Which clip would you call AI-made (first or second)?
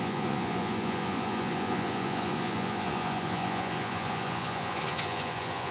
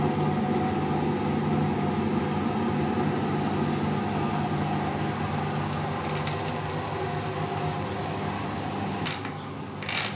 first